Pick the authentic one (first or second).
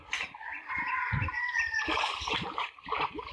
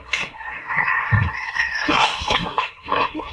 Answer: first